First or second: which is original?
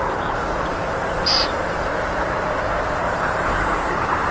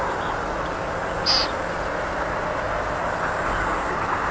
second